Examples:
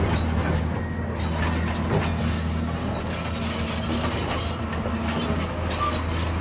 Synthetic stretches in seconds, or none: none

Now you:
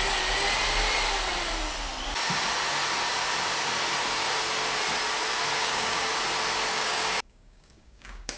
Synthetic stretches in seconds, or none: 5.6-6.1 (codec, DAC); 6.7-8.4

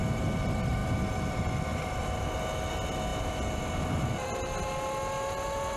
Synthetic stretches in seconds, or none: none

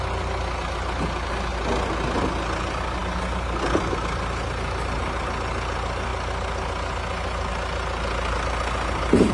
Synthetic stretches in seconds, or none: none

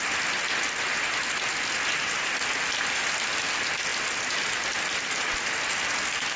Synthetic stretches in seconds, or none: none